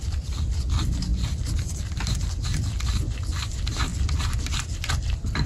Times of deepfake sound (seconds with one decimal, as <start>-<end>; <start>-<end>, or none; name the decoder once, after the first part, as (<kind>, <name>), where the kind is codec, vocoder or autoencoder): none